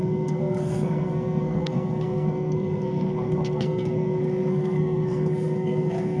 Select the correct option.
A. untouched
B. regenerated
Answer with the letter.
B